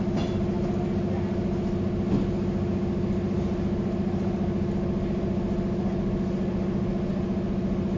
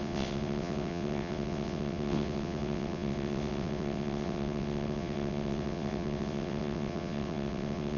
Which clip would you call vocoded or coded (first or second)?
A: second